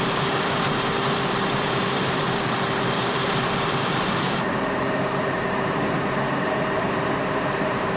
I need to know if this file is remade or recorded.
remade